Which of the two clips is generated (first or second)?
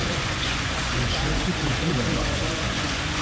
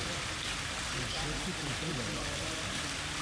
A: first